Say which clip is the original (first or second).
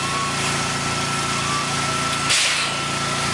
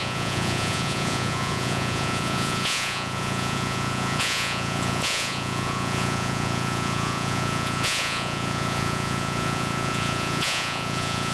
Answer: first